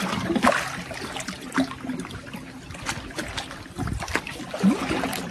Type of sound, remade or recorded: recorded